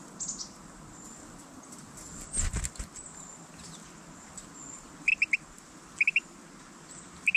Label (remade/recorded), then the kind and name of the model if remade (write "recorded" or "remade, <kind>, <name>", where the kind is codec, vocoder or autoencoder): recorded